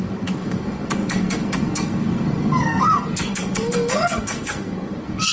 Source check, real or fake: fake